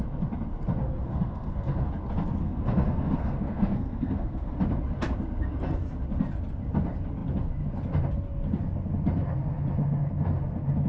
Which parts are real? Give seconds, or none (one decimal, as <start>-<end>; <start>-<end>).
0.0-0.8; 1.9-2.4; 4.6-10.9